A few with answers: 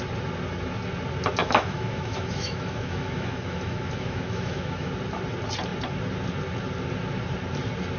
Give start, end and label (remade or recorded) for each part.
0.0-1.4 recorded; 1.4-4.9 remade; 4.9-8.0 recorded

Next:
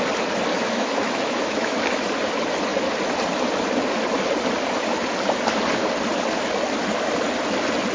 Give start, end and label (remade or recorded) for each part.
0.0-0.5 recorded; 0.5-1.8 remade; 1.8-7.9 recorded

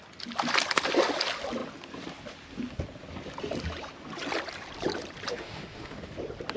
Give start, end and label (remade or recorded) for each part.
0.0-5.3 recorded; 5.3-6.1 remade; 6.1-6.6 recorded

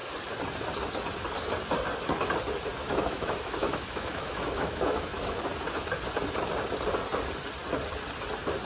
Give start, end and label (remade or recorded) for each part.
0.0-2.8 recorded; 2.8-5.4 remade; 5.4-8.7 recorded

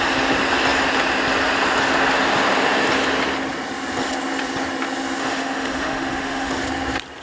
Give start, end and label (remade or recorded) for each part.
0.0-5.2 recorded; 5.2-6.5 remade; 6.5-7.2 recorded

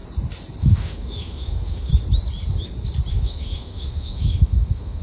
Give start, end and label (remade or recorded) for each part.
0.0-0.6 recorded; 0.6-1.9 remade; 1.9-3.1 recorded; 3.1-5.0 remade